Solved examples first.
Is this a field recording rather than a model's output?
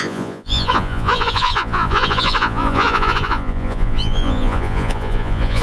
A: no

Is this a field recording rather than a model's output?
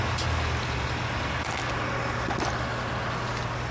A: yes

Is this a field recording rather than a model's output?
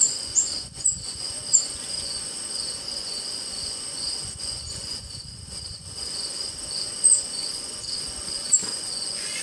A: no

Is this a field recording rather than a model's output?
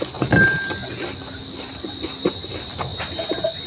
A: yes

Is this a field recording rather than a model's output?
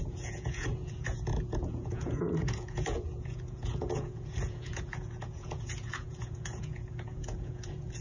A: no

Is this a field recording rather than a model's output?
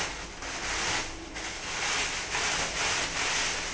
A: yes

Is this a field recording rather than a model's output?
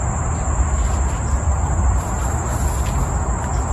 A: yes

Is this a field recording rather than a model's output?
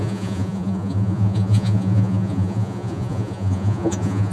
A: no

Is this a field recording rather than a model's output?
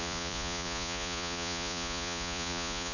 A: no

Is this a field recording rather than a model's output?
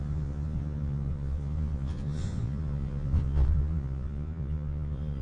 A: no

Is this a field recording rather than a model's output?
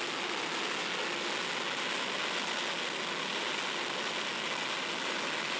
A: yes